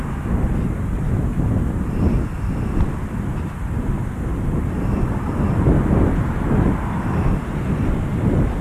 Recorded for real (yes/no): yes